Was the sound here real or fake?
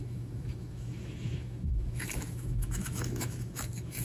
fake